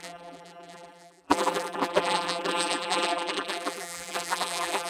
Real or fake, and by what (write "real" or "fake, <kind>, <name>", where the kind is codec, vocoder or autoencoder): fake, vocoder, BigVGAN v2